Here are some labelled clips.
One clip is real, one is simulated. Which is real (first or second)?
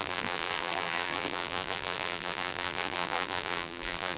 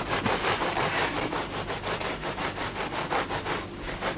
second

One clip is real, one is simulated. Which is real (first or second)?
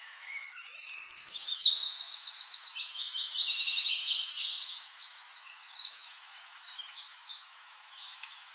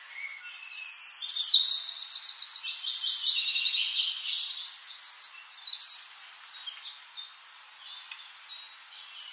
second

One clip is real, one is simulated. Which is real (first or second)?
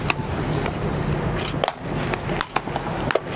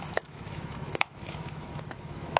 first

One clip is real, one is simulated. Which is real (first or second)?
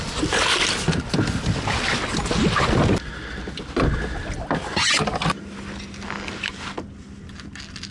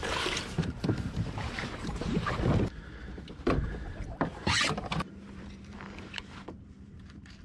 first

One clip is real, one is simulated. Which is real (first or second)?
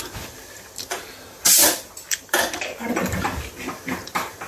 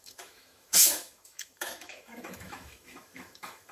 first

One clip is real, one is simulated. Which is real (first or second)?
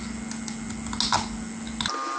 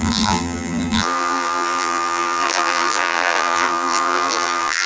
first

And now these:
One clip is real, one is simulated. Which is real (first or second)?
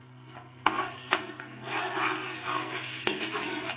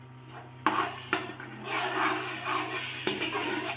second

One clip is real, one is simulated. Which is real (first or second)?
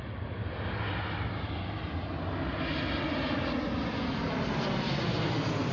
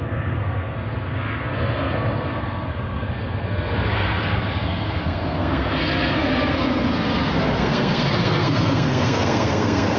first